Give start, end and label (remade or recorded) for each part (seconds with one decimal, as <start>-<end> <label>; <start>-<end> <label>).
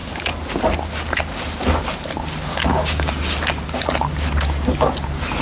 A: 0.0-2.5 recorded; 2.5-3.1 remade; 3.1-5.4 recorded